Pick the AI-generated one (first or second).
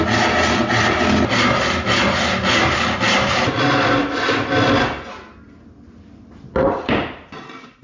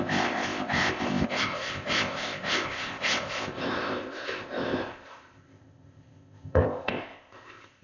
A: second